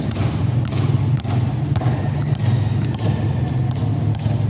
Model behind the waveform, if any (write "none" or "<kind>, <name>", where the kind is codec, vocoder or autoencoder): none